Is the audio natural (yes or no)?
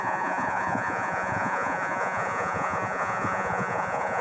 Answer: no